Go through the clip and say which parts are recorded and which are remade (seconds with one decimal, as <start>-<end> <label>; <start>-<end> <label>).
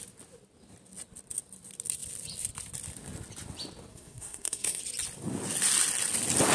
0.0-3.9 recorded; 3.9-4.8 remade; 4.8-6.5 recorded